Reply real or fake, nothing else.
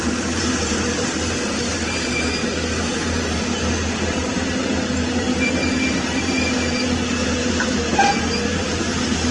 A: fake